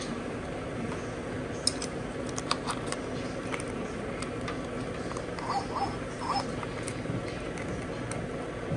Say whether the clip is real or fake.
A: real